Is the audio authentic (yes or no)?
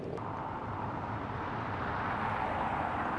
no